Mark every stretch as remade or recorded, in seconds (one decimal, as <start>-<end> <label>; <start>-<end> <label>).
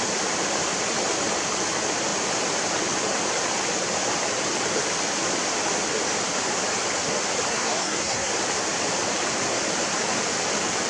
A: 0.0-7.5 recorded; 7.5-8.3 remade; 8.3-10.9 recorded